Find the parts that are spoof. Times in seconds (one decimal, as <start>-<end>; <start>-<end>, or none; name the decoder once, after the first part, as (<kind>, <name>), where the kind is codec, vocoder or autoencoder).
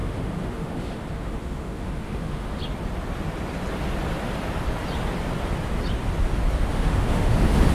0.0-2.6 (autoencoder, DAC-VAE); 6.7-7.7